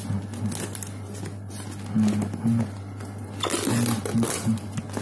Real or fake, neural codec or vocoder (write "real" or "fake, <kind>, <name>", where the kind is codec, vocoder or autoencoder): real